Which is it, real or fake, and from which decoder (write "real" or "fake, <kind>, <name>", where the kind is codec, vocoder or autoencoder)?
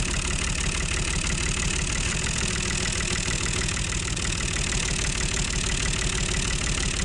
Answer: real